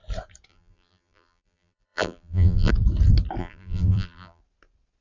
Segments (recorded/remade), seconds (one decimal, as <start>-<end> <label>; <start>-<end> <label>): 0.0-0.5 recorded; 0.5-2.7 remade; 2.7-3.4 recorded; 3.4-4.4 remade; 4.4-5.0 recorded